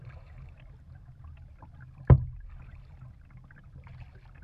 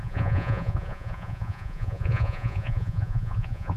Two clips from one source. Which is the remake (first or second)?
second